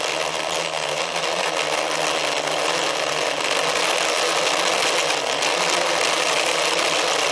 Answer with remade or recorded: recorded